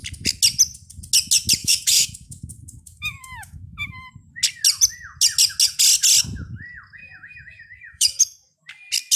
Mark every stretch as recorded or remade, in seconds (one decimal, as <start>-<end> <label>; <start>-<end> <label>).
0.0-1.6 recorded; 1.6-4.3 remade; 4.3-7.0 recorded; 7.0-8.7 remade; 8.7-9.2 recorded